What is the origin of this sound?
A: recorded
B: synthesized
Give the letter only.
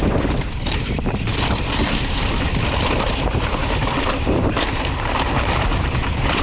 B